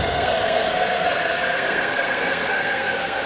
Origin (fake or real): fake